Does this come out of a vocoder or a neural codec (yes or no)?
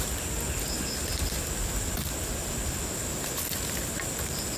no